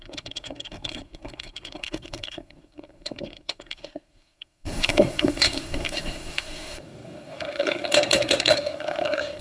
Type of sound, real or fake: fake